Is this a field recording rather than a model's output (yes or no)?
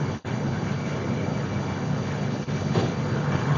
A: no